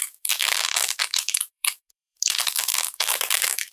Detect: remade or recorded remade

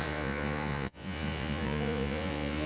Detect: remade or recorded remade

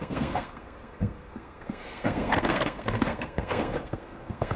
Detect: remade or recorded remade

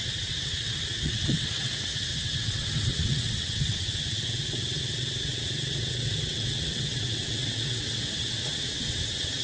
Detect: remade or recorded remade